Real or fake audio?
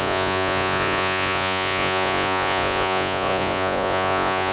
fake